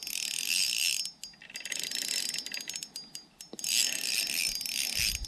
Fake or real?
real